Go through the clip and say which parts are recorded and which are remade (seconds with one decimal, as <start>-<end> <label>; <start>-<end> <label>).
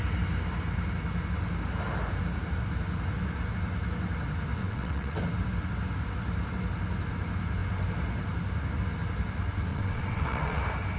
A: 0.0-4.6 recorded; 4.6-5.2 remade; 5.2-9.7 recorded; 9.7-10.6 remade; 10.6-11.0 recorded